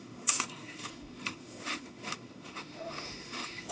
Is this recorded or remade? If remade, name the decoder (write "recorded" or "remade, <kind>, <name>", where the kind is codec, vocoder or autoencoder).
remade, autoencoder, DAC-VAE